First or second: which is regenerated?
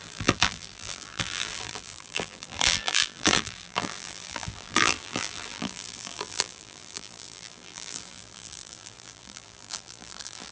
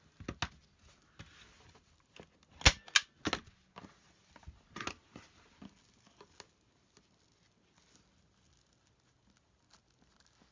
first